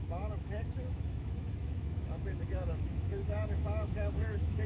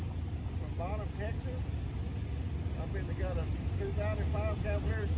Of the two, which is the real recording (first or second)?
second